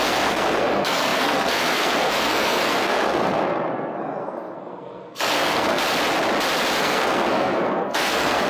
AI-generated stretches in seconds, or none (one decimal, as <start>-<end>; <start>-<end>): 0.0-5.8; 6.8-8.5